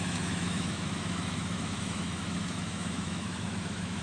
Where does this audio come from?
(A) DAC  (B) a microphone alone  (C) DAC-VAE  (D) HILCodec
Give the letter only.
C